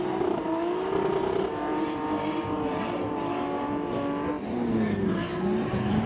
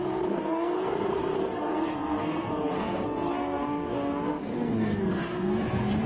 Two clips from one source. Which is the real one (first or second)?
first